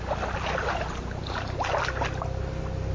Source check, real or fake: real